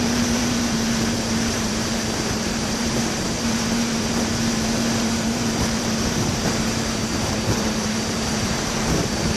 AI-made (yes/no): yes